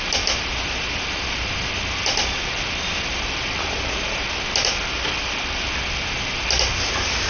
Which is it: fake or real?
real